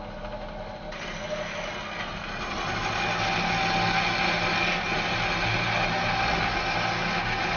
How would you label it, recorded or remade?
recorded